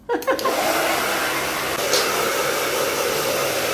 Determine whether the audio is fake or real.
real